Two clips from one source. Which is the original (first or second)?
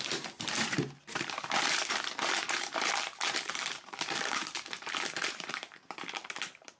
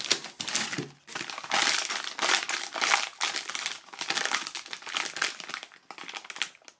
second